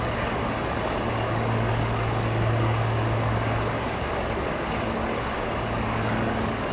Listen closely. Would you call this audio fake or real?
fake